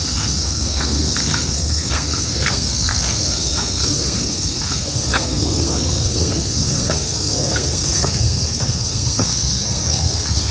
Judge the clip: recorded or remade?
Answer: remade